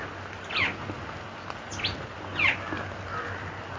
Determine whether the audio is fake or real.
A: real